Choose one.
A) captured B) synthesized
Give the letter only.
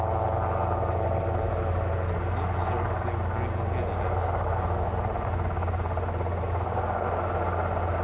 A